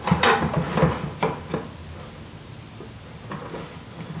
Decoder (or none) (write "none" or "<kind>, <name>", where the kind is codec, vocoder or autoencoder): none